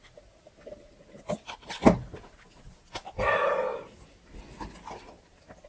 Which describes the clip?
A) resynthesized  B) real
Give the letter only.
B